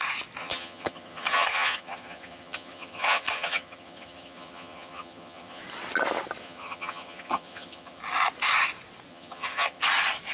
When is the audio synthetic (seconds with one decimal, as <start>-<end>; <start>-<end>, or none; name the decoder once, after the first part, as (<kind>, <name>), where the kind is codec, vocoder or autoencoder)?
0.4-5.6 (vocoder, HiFi-GAN); 6.4-8.0; 9.1-9.8